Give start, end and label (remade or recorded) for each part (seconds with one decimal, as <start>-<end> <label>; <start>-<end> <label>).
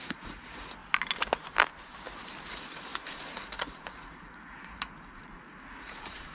0.0-0.8 remade; 0.8-2.5 recorded; 2.5-6.3 remade